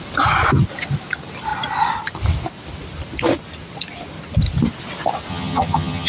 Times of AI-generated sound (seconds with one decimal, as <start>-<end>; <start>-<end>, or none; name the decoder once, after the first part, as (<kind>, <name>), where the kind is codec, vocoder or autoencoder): 5.3-6.1 (vocoder, HiFi-GAN)